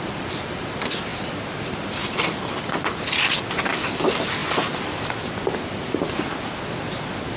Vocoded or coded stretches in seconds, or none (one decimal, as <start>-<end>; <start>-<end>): none